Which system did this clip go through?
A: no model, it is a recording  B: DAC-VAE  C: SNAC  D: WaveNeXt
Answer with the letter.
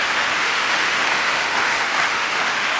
B